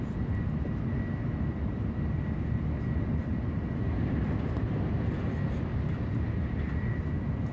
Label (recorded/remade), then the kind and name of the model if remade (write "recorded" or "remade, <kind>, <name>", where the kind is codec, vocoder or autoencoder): recorded